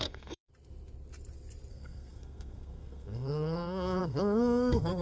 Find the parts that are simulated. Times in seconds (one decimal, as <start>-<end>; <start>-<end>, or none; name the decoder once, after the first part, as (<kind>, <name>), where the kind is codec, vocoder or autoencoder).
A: 0.0-0.5 (codec, SNAC); 1.7-5.0